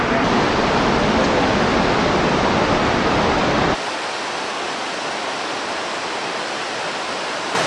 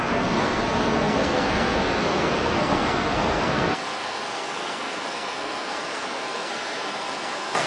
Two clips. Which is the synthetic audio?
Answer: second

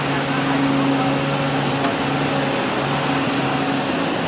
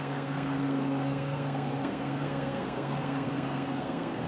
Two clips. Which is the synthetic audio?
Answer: second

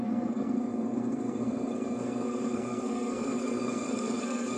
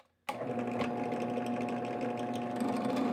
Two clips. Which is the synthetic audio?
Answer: first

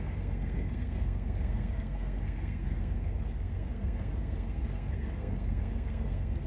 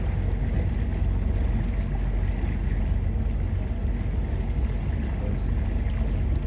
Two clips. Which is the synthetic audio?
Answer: first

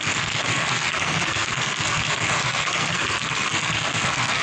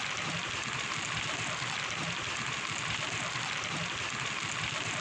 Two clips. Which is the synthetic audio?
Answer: first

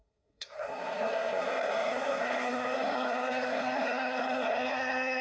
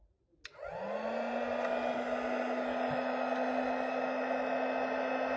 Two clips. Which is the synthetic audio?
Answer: first